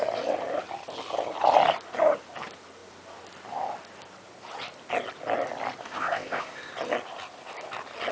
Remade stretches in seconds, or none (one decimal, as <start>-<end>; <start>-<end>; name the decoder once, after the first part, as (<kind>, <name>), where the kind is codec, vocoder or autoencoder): 5.8-6.7 (codec, ZipCodec)